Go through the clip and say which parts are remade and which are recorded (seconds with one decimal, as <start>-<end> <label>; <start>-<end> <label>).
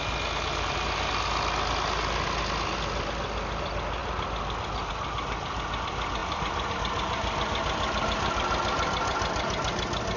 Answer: 0.0-10.2 recorded